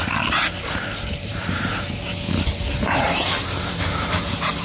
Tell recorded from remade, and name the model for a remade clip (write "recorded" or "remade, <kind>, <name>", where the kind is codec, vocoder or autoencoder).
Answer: recorded